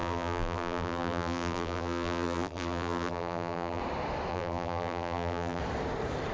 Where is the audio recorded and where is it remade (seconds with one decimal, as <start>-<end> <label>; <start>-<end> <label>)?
0.0-3.8 remade; 3.8-4.3 recorded; 4.3-5.6 remade; 5.6-6.3 recorded